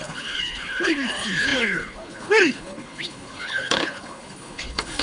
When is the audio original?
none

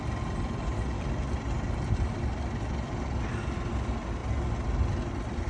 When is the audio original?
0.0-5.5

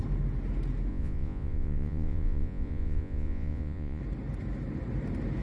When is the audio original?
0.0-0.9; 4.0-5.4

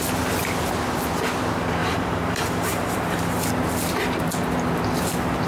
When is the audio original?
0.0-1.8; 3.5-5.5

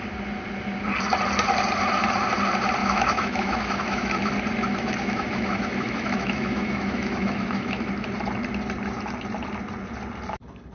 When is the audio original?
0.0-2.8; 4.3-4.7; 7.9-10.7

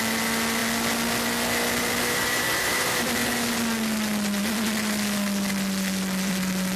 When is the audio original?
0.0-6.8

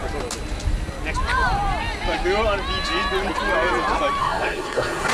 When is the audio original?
0.0-4.2